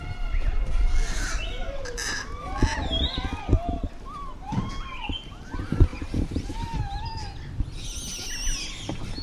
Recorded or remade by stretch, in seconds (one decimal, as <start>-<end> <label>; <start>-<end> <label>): 0.0-1.6 recorded; 1.6-2.4 remade; 2.4-3.5 recorded; 3.5-4.7 remade; 4.7-5.9 recorded; 5.9-6.4 remade; 6.4-9.2 recorded